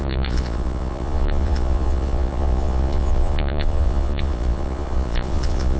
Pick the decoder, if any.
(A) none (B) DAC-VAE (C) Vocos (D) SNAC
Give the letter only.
C